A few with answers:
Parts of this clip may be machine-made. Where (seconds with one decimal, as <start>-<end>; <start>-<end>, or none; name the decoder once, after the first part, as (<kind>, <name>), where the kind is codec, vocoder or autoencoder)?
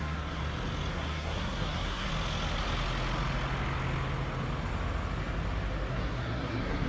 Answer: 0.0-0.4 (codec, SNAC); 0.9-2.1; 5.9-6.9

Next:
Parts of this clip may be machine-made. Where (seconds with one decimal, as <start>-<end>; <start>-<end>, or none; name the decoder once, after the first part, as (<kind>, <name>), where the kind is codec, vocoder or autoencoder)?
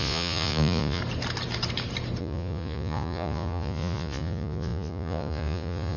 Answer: 0.0-1.0 (vocoder, Vocos); 2.2-6.0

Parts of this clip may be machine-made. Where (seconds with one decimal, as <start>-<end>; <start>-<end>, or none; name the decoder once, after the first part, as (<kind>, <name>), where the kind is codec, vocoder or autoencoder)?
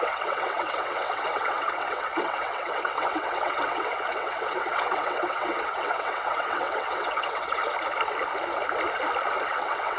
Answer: 0.0-7.6 (vocoder, WaveNeXt); 9.5-10.0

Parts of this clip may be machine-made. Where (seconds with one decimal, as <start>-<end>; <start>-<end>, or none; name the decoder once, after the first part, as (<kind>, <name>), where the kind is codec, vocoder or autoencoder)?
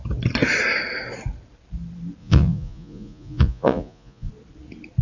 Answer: 2.2-4.3 (vocoder, Vocos)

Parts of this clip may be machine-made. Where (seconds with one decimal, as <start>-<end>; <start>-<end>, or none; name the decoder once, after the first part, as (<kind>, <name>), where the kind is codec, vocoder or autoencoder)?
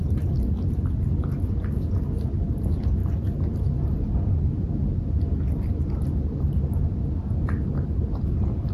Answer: none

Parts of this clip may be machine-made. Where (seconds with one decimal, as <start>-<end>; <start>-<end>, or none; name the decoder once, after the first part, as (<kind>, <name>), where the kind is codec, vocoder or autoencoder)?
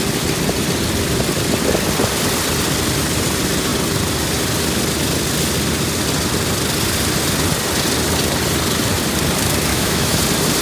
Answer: 9.7-10.2 (autoencoder, DAC-VAE)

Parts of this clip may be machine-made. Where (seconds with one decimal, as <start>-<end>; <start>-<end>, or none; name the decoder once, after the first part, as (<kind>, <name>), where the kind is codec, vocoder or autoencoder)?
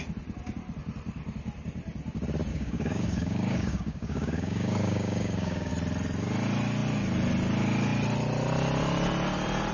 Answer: 2.5-5.7 (codec, DAC)